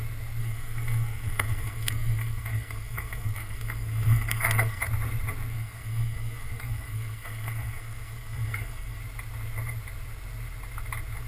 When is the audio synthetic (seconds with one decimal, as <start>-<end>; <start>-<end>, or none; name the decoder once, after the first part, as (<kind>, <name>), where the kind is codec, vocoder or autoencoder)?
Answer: 0.4-4.8 (codec, SNAC); 5.5-9.0